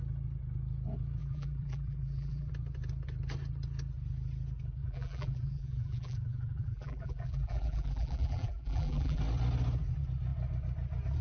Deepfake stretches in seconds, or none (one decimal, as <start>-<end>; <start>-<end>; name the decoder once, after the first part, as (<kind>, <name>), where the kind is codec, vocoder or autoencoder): 1.2-2.5 (vocoder, BigVGAN v2); 4.8-9.2